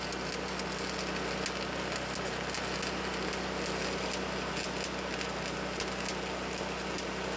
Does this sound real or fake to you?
real